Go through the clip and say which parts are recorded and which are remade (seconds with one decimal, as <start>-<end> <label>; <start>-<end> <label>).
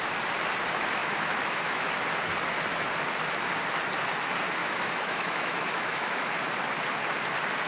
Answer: 0.0-1.0 recorded; 1.0-1.9 remade; 1.9-4.6 recorded; 4.6-6.4 remade; 6.4-7.7 recorded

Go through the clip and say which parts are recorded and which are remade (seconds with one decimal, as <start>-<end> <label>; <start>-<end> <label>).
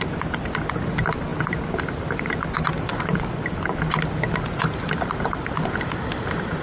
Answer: 0.0-6.6 recorded